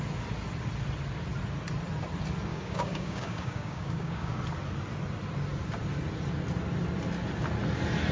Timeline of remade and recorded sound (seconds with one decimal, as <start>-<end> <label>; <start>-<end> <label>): 0.0-2.5 recorded; 2.5-4.4 remade; 4.4-8.1 recorded